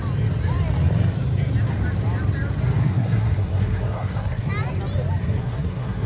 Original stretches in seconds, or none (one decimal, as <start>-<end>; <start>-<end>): 0.0-2.8; 4.5-5.2